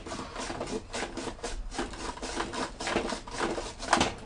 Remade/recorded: recorded